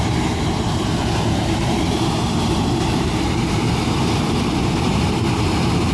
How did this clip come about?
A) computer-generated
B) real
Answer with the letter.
A